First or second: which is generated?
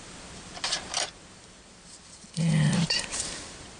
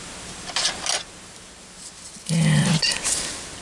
first